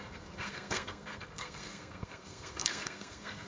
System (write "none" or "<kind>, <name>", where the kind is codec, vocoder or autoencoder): codec, SNAC